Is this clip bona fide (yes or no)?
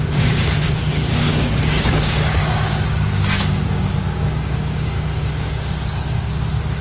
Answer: no